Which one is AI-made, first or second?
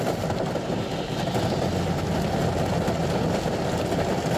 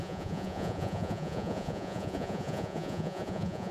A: second